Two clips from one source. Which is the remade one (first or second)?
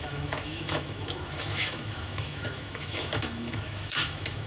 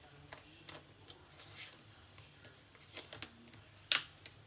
first